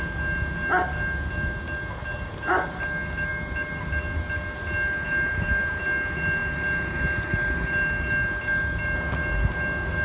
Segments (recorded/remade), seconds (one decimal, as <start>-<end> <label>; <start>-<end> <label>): 0.0-10.0 recorded